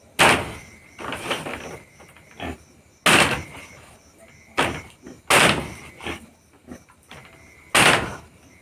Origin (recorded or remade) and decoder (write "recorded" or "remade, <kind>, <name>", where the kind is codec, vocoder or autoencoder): recorded